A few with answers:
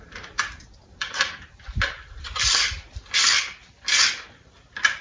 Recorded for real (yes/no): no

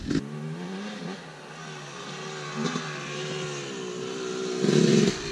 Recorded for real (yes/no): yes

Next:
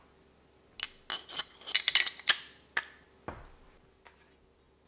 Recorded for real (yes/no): yes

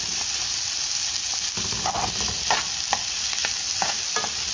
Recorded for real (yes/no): yes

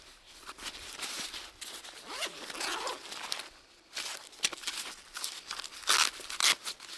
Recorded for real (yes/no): yes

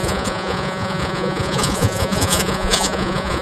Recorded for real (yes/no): no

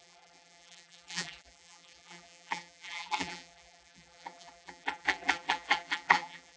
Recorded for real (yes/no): no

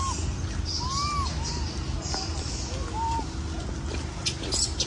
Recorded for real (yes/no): yes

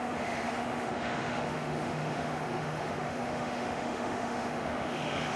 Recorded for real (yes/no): no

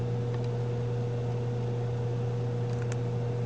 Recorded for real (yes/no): yes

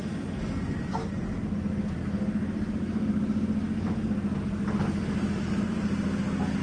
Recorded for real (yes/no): yes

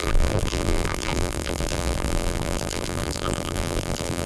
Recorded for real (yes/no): no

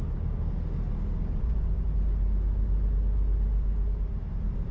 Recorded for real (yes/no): yes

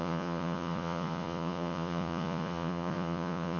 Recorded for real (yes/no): no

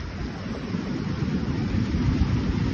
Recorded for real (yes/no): no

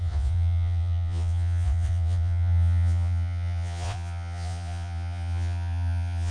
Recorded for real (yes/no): no